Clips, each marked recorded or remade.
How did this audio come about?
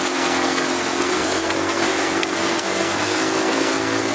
remade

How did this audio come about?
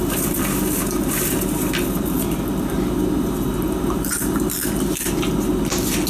recorded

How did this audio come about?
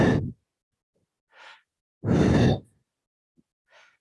recorded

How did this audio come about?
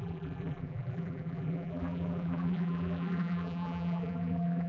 remade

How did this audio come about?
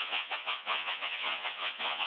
remade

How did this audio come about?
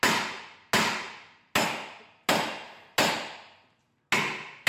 recorded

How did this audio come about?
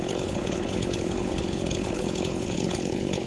remade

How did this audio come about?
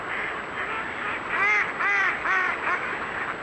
recorded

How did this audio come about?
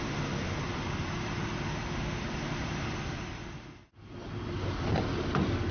recorded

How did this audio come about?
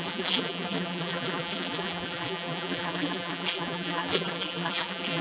remade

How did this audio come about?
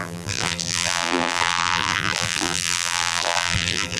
remade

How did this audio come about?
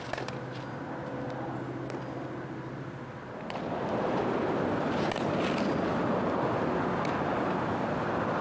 recorded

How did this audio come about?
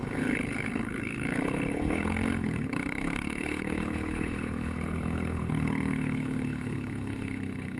remade